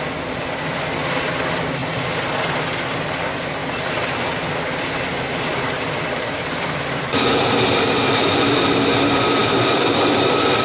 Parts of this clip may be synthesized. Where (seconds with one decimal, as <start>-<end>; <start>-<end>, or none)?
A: 3.6-4.9; 5.5-7.1; 9.4-10.6